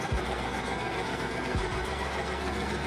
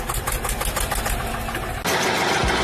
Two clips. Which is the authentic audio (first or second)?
second